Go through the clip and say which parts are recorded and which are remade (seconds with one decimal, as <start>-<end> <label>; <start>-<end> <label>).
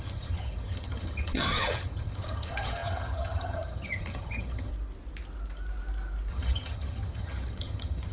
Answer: 0.0-4.7 remade; 4.7-6.3 recorded; 6.3-8.1 remade